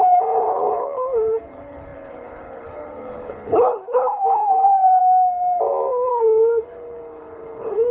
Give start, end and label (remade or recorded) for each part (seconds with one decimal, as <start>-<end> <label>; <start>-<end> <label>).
0.0-5.0 remade; 5.0-6.1 recorded; 6.1-7.9 remade